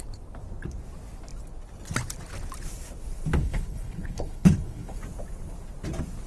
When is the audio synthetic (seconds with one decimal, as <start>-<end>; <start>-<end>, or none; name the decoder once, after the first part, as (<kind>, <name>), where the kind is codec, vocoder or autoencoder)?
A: 3.4-5.0 (codec, HILCodec)